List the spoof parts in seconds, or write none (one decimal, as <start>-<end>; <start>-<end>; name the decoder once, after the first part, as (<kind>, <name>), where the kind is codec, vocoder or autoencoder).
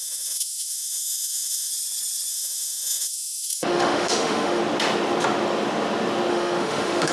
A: 0.0-1.7 (autoencoder, DAC-VAE); 2.3-4.6; 6.3-7.1